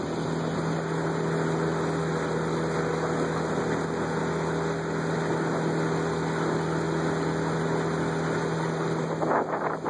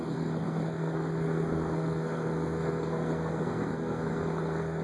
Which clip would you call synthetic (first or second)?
second